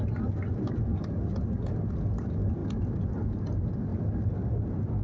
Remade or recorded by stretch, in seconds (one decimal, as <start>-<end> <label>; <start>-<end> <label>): 0.0-2.6 recorded; 2.6-3.3 remade; 3.3-3.9 recorded; 3.9-4.5 remade; 4.5-5.0 recorded